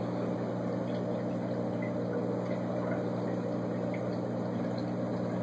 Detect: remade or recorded recorded